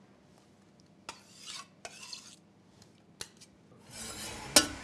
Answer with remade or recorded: recorded